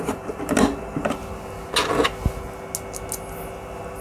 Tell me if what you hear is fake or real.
real